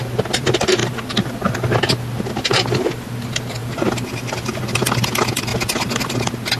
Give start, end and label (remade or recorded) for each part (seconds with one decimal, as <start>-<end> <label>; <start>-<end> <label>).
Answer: 0.0-6.6 recorded